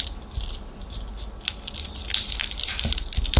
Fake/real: real